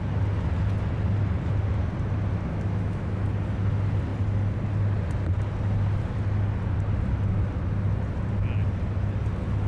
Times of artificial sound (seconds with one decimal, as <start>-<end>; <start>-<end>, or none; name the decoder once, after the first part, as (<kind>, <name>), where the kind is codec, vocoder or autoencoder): 2.5-3.2 (autoencoder, DAC-VAE)